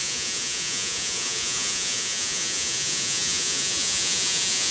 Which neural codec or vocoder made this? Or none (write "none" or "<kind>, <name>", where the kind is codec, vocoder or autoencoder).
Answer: vocoder, Vocos